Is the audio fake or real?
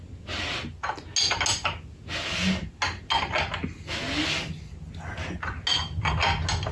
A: real